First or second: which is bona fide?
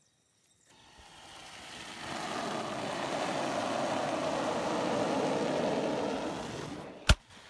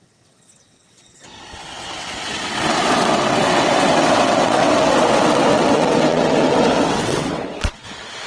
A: first